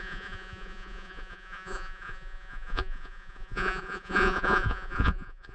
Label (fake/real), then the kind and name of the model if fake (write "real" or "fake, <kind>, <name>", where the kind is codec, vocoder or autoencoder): fake, vocoder, Vocos